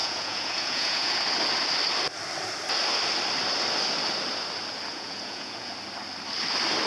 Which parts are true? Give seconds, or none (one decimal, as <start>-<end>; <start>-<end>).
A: 1.2-4.9; 5.7-6.9